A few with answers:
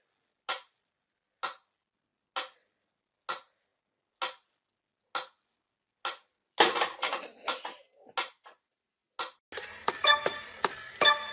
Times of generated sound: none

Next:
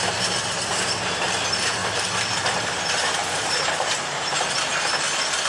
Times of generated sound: 0.4-1.0 (vocoder, BigVGAN v2); 3.2-4.4

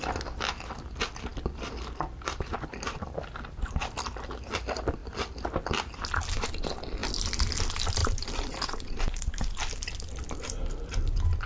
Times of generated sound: 8.0-9.5 (vocoder, BigVGAN v2)

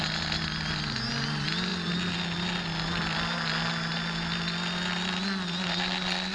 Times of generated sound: none

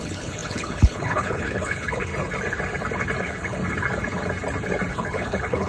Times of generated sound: 0.0-2.1 (codec, HILCodec); 3.2-3.6; 4.9-5.7

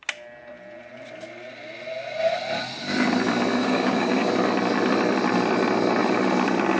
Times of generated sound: 3.6-4.3 (codec, DAC)

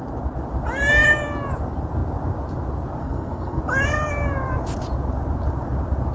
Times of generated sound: 3.0-3.6 (codec, SNAC)